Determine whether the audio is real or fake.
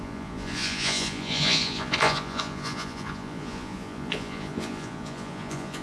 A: fake